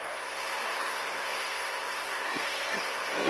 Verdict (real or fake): fake